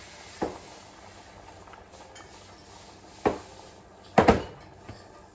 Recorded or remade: recorded